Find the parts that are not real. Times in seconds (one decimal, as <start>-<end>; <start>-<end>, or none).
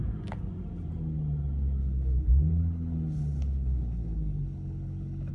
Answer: 1.8-5.3